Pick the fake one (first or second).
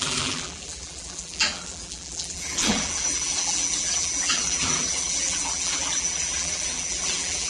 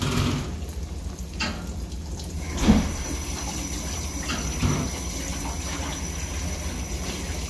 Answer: first